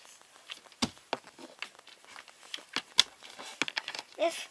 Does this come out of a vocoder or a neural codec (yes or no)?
no